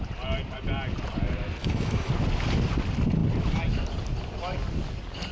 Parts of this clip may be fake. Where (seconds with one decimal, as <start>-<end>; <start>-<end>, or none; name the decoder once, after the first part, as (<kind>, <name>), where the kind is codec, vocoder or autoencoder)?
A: 1.6-2.1 (autoencoder, DAC-VAE)